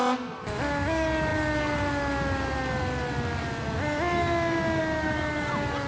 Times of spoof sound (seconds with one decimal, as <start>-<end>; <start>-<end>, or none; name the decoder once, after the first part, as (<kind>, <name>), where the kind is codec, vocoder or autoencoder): none